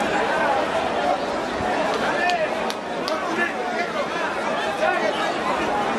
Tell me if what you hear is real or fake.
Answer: real